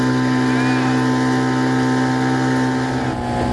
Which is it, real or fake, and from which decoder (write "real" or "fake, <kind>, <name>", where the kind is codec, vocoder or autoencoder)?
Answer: real